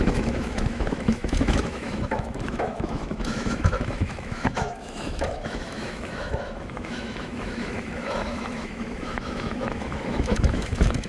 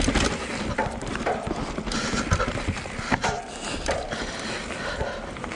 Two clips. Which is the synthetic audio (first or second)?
first